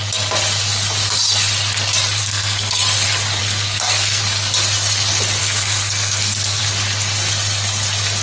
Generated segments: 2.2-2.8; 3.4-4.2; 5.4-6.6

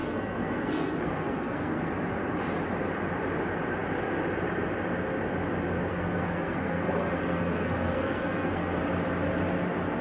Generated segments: 0.0-1.9; 5.9-8.8

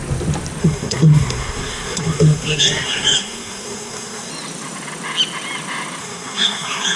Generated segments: 0.6-4.3; 6.0-7.0

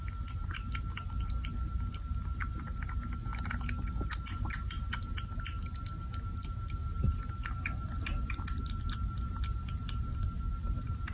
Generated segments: none

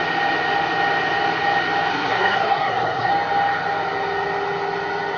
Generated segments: 1.9-3.1

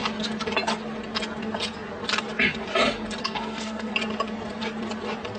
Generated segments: 3.2-3.9

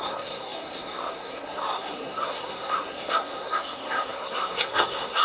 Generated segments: 0.0-5.2